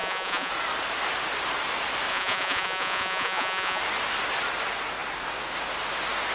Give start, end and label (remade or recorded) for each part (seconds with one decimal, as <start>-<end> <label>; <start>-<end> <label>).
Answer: 0.0-0.5 remade; 0.5-2.1 recorded; 2.1-3.8 remade; 3.8-6.3 recorded

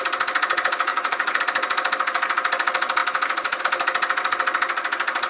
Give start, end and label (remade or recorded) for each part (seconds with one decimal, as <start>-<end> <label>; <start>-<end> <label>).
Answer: 0.0-0.9 recorded; 0.9-1.4 remade; 1.4-5.3 recorded

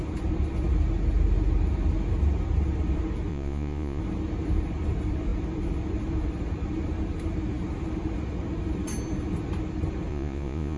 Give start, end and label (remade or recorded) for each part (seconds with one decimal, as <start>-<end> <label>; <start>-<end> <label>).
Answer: 0.0-3.3 recorded; 3.3-4.0 remade; 4.0-10.1 recorded; 10.1-10.8 remade

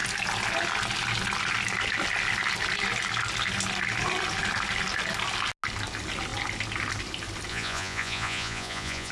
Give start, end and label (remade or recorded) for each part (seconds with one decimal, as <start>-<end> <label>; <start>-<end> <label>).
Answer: 0.0-7.5 recorded; 7.5-9.1 remade

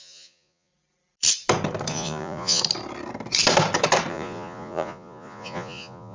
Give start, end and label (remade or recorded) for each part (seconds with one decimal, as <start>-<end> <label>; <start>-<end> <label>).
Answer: 0.0-0.7 remade; 0.7-1.9 recorded; 1.9-2.6 remade; 2.6-4.1 recorded; 4.1-6.1 remade

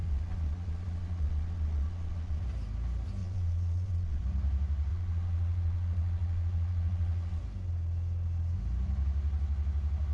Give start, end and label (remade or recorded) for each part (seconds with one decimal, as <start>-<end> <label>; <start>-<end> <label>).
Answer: 0.0-2.4 remade; 2.4-3.2 recorded; 3.2-4.2 remade; 4.2-4.9 recorded; 4.9-7.4 remade; 7.4-10.1 recorded